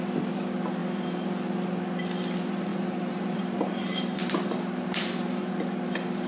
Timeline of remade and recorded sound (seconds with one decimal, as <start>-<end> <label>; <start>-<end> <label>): 0.0-2.7 recorded; 2.7-5.5 remade; 5.5-6.3 recorded